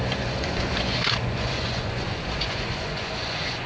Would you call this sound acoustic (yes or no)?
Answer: no